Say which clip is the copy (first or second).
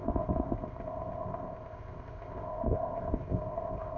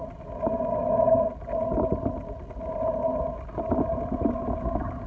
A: first